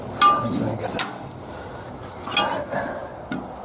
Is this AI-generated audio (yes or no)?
no